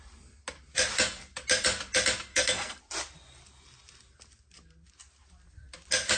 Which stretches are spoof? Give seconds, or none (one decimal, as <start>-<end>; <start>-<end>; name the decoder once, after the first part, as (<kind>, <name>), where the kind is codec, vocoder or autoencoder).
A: 2.3-2.8 (codec, SNAC)

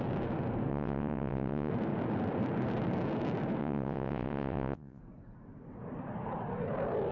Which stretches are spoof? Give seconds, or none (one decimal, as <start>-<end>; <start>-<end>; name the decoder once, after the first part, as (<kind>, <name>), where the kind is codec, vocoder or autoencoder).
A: 0.7-1.7 (vocoder, WaveNeXt); 3.6-5.0

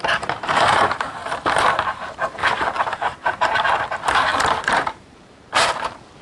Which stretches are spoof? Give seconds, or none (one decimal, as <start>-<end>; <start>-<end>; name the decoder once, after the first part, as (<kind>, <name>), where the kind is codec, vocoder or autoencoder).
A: 0.0-1.2 (vocoder, BigVGAN v2); 1.7-2.4; 2.9-6.2

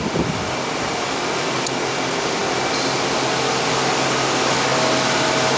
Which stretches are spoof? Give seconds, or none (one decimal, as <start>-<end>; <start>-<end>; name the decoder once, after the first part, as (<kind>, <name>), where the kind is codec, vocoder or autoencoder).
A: none

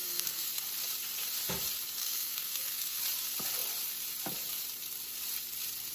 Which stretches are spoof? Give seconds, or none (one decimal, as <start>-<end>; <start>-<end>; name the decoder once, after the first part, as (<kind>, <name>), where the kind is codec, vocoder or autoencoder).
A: 0.0-0.5 (codec, SNAC); 2.0-3.0

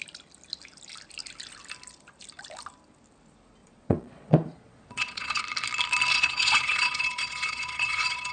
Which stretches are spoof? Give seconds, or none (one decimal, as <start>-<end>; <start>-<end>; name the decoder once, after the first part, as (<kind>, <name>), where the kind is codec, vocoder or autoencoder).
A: 3.6-5.4 (vocoder, Vocos); 6.1-8.3